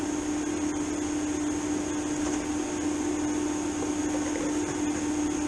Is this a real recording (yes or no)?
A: yes